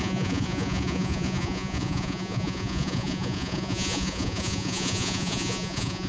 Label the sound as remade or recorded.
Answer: remade